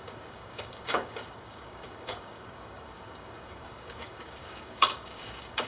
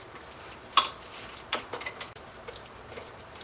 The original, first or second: second